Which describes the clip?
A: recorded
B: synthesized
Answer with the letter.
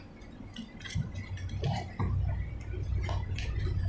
A